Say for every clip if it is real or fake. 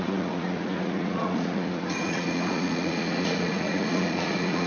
fake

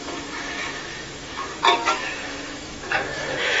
fake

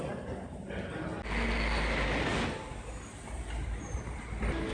real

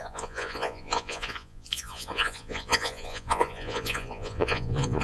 fake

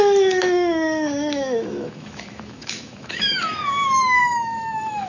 fake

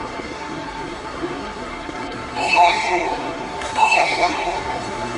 fake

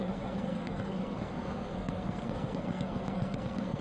fake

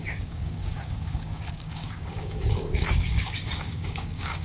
fake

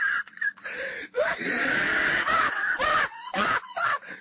fake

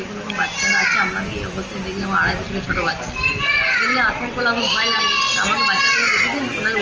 real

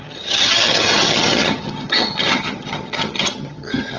fake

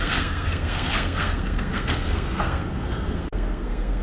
fake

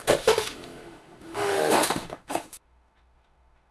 fake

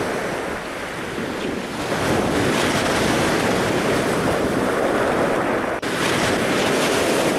real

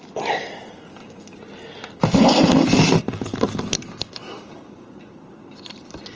real